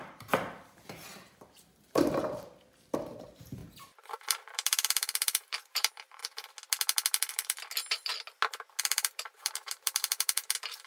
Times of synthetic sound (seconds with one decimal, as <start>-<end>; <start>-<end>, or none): 0.0-6.2; 7.3-8.1; 8.8-10.9